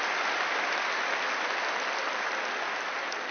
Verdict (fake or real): real